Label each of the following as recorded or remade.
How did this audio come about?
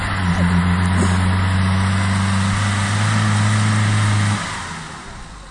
recorded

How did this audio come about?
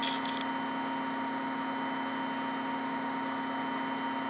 recorded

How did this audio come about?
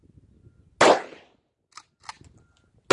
recorded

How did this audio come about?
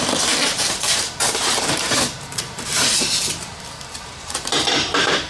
remade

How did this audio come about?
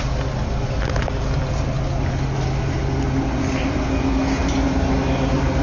recorded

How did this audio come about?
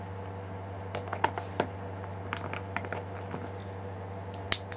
recorded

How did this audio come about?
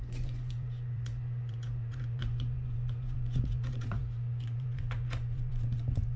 remade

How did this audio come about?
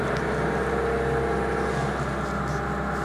recorded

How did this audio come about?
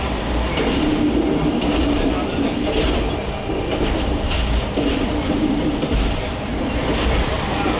recorded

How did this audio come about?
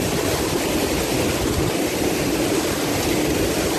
recorded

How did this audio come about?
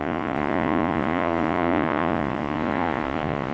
remade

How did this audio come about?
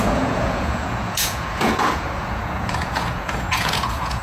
remade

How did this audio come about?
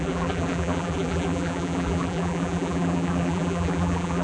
remade